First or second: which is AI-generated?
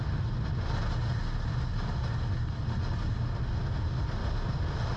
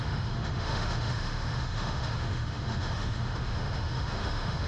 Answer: second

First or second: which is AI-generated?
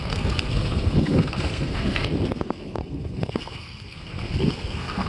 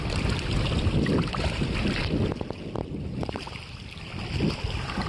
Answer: first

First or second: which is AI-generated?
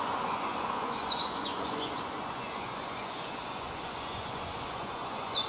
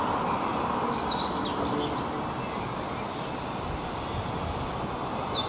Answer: first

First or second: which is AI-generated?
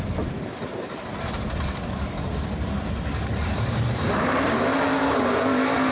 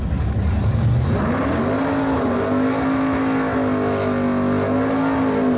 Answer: first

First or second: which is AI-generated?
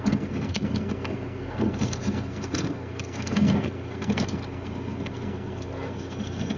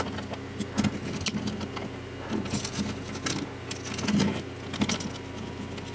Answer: first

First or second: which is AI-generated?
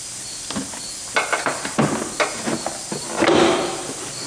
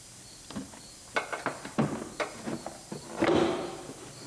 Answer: second